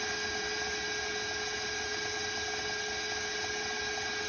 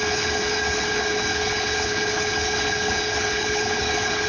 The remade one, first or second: second